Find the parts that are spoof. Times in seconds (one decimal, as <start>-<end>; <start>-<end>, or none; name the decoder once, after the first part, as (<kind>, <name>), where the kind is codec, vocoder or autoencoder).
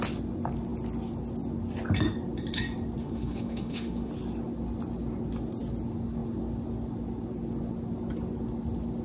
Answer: 3.0-4.1 (autoencoder, DAC-VAE)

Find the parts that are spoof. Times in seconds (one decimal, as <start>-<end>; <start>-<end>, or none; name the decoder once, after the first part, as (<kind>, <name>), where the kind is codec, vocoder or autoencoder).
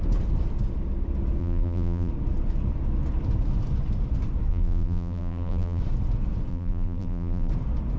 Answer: 1.4-2.1 (vocoder, BigVGAN v2); 4.5-5.8; 6.5-7.5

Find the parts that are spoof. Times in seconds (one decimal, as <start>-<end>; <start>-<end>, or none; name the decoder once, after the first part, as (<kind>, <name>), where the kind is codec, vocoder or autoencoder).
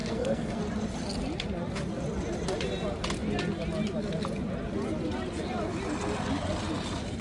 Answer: 0.0-0.6 (codec, SNAC)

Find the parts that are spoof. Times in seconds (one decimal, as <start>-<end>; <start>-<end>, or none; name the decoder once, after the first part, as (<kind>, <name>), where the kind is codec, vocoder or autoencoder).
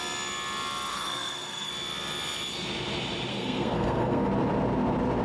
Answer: 0.9-1.7 (codec, SNAC); 3.3-4.3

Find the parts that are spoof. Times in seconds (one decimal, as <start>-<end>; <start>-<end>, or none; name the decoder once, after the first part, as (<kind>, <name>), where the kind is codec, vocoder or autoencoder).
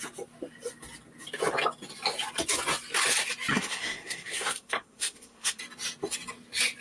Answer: 3.5-5.6 (codec, SNAC)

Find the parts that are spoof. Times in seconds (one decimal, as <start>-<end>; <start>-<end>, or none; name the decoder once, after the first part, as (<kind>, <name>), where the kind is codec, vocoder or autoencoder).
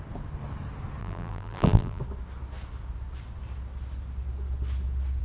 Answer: 1.0-2.0 (vocoder, BigVGAN v2)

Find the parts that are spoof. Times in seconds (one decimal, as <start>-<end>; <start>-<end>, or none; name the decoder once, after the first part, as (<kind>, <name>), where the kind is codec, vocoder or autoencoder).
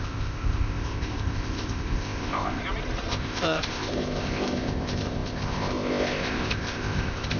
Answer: 0.0-2.6 (codec, ZipCodec); 3.1-7.4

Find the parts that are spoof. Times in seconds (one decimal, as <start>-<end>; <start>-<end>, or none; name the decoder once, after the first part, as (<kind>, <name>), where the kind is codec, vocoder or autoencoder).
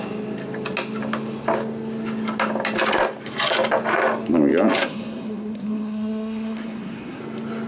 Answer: 4.8-7.2 (codec, SNAC)